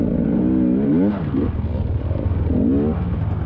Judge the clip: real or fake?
real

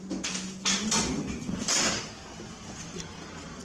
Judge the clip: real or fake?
real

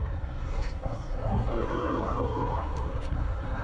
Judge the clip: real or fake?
fake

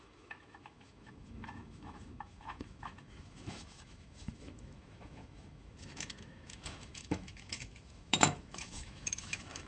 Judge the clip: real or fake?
fake